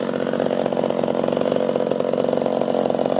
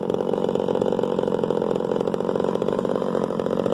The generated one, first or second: second